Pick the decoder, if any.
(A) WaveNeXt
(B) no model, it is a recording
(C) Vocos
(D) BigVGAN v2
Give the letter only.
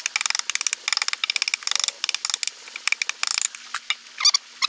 B